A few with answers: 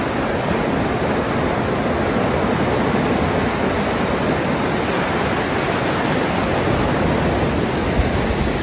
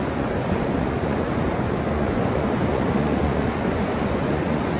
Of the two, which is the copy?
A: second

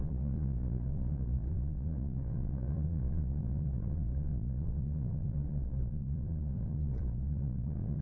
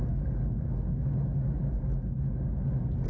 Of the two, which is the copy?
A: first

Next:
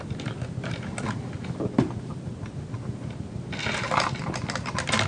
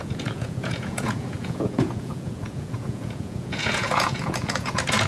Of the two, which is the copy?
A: second